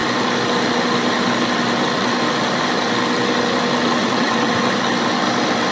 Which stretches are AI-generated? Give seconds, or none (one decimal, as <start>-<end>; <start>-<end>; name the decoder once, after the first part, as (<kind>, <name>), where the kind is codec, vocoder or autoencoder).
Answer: 4.0-4.5 (vocoder, WaveNeXt)